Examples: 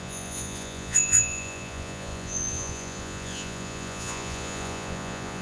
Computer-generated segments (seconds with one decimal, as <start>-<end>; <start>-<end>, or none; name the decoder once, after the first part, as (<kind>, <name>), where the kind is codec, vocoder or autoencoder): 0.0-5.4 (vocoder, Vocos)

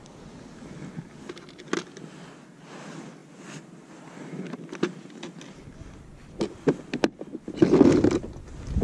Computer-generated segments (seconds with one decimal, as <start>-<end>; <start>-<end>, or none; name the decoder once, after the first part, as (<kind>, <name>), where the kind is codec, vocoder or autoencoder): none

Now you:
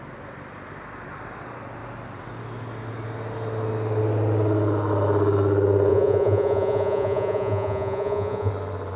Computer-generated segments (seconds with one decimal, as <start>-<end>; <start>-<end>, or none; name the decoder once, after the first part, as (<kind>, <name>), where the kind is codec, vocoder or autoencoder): 5.9-8.5 (vocoder, Vocos)

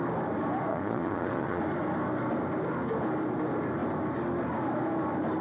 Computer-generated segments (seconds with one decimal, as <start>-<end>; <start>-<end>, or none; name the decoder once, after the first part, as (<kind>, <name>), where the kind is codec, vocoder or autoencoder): 0.7-1.6 (vocoder, Vocos)

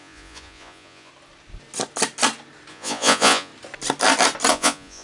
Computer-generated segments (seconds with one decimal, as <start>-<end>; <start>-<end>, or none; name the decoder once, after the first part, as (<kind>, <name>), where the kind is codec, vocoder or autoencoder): 0.0-1.1 (vocoder, Vocos); 2.7-3.5; 4.5-5.0

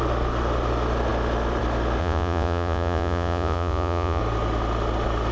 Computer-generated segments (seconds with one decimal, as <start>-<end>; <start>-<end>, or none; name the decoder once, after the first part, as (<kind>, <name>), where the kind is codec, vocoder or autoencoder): 2.0-4.2 (vocoder, Vocos)

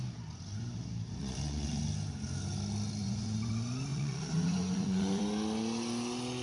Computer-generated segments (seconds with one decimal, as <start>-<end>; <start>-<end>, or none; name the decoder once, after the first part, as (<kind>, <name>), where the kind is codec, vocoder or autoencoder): 1.2-1.8 (vocoder, Vocos); 3.0-3.5; 3.9-5.2